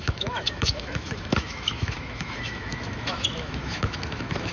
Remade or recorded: remade